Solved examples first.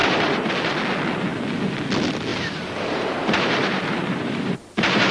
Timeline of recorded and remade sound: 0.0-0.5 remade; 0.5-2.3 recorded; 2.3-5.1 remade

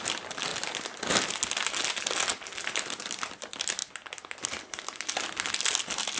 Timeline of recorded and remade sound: 0.0-6.2 recorded

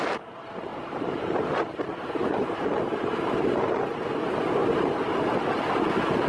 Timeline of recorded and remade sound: 0.0-0.7 recorded; 0.7-3.4 remade; 3.4-6.3 recorded